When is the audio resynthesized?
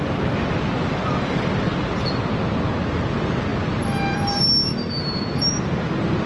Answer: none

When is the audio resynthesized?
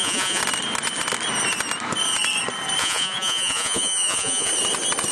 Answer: 0.0-0.4; 2.8-4.5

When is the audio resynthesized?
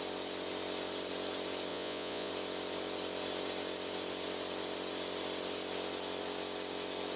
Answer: 1.7-2.3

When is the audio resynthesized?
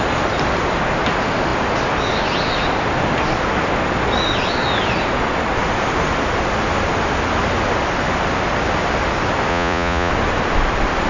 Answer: 9.5-10.1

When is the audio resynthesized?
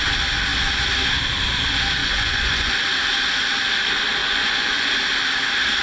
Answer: 2.0-2.7; 4.2-4.9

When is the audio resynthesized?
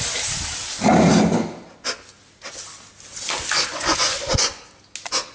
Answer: 3.7-4.6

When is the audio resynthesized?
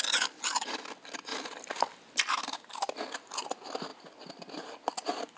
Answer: none